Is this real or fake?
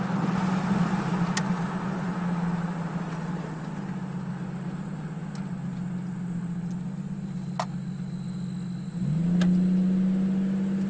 real